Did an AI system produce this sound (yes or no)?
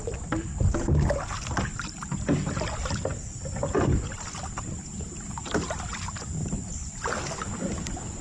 no